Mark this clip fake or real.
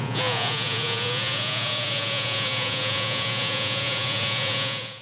fake